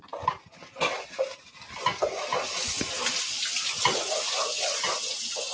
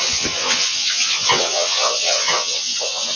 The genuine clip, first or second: first